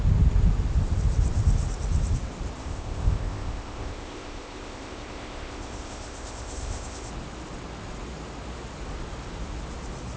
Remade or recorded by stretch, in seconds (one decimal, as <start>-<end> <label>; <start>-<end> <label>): 0.0-2.6 recorded; 2.6-7.1 remade; 7.1-10.2 recorded